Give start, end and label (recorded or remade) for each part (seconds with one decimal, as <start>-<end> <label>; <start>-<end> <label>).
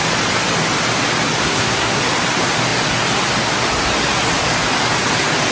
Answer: 0.0-1.4 recorded; 1.4-2.0 remade; 2.0-5.5 recorded